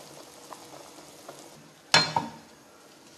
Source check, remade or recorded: recorded